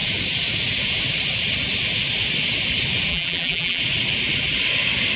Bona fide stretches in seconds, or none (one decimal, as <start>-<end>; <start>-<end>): 0.0-3.1; 3.8-5.2